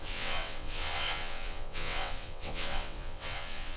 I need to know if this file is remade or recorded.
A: remade